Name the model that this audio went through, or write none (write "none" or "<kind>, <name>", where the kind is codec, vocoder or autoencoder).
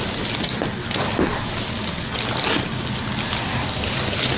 none